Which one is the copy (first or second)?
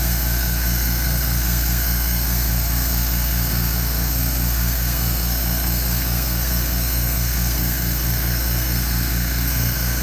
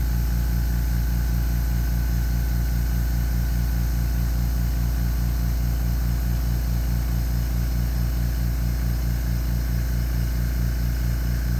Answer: first